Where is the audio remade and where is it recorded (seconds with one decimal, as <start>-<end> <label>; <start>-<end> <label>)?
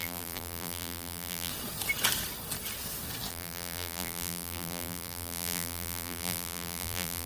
0.0-1.5 remade; 1.5-3.3 recorded; 3.3-7.3 remade